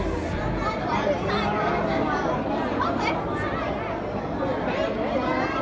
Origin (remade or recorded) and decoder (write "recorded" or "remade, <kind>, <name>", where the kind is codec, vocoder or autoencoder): recorded